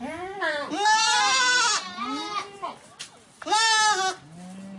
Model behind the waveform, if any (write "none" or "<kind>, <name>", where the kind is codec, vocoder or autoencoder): none